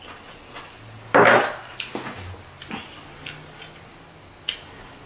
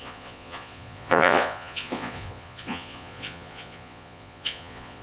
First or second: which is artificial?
second